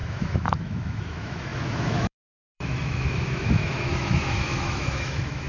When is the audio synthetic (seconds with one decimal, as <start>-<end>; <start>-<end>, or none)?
0.0-5.5